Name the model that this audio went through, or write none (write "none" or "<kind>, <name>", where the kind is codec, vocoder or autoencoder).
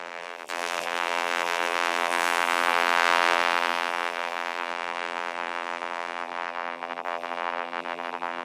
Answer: vocoder, BigVGAN v2